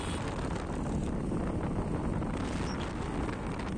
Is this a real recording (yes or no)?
yes